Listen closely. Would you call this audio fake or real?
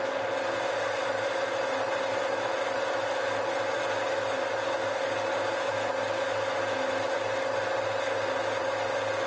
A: real